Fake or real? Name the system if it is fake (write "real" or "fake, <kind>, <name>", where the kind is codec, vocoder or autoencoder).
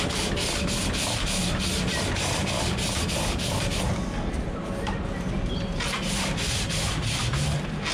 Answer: real